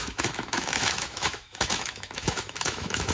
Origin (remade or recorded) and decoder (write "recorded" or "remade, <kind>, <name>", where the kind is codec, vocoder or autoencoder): remade, autoencoder, DAC-VAE